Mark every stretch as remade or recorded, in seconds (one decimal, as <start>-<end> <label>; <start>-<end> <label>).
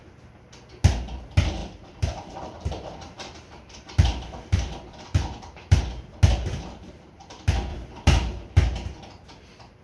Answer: 0.0-1.6 recorded; 1.6-5.8 remade; 5.8-7.7 recorded; 7.7-8.4 remade; 8.4-9.8 recorded